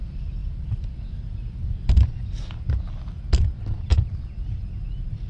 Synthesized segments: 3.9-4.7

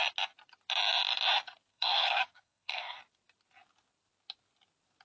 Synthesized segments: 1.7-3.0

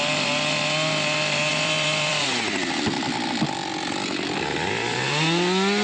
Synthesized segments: 1.5-5.0

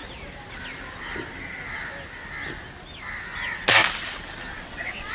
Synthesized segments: 4.5-5.1

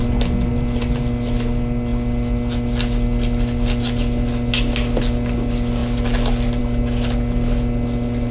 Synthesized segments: none

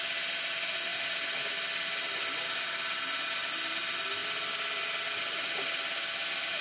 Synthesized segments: none